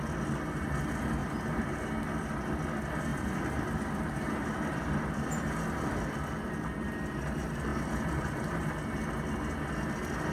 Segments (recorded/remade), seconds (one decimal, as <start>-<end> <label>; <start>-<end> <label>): 0.0-1.2 recorded; 1.2-1.8 remade; 1.8-3.1 recorded; 3.1-5.6 remade; 5.6-7.7 recorded; 7.7-8.7 remade; 8.7-10.3 recorded